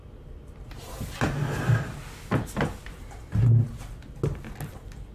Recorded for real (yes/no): yes